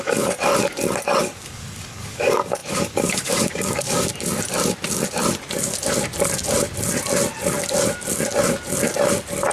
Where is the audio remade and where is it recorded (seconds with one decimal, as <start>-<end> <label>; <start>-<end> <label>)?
0.0-0.5 remade; 0.5-1.2 recorded; 1.2-4.1 remade; 4.1-9.5 recorded